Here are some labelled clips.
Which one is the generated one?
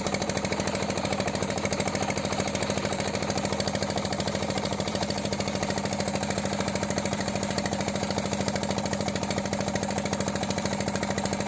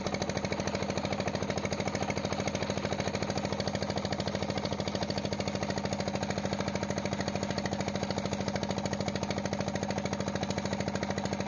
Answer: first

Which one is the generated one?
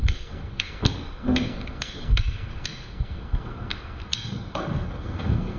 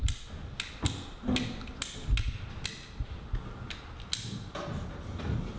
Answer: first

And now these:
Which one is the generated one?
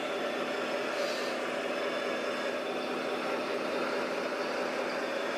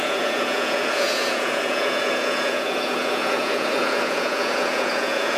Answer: second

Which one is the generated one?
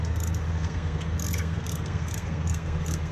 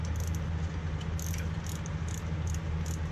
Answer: first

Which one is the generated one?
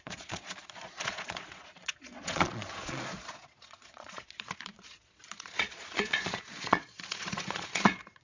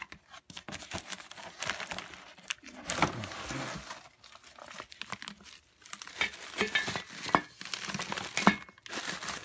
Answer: first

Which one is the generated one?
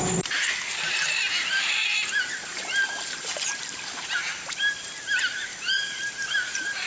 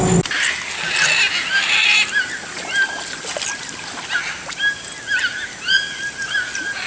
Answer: first